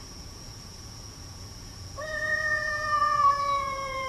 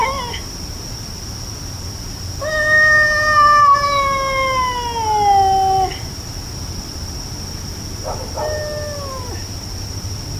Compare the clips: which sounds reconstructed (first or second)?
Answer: first